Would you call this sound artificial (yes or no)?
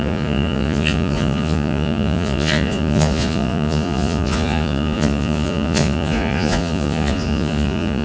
yes